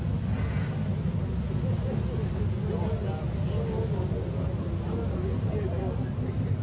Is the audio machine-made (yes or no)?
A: no